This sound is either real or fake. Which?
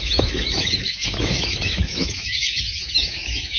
fake